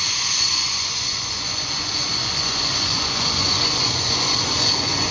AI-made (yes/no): yes